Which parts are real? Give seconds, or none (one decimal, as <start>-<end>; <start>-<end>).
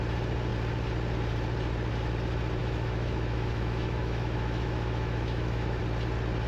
0.0-2.6; 5.8-6.5